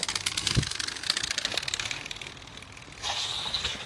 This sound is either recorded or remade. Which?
recorded